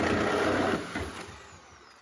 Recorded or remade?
recorded